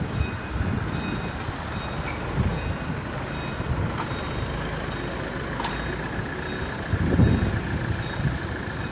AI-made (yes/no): no